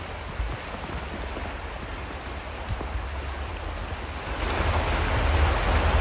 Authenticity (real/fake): real